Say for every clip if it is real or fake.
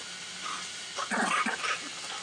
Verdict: real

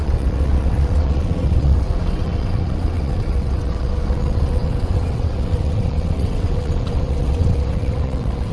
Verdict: fake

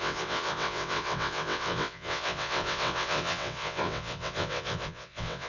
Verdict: fake